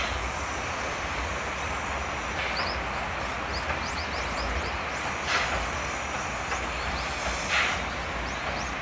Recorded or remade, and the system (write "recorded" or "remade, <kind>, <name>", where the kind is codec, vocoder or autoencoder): recorded